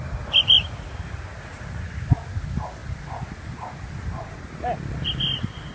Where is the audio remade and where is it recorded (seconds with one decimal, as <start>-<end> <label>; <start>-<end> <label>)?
0.0-5.7 recorded